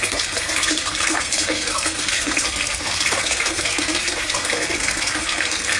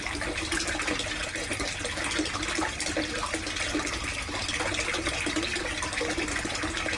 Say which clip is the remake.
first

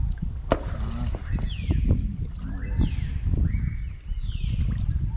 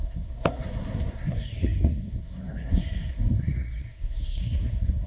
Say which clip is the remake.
second